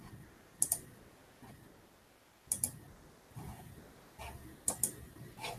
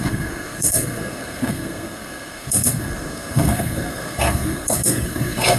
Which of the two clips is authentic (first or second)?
first